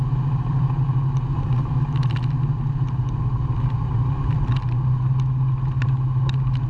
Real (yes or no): yes